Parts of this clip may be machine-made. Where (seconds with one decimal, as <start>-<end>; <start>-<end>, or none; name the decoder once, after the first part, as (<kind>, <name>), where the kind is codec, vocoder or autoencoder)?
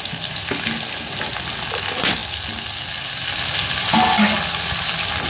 none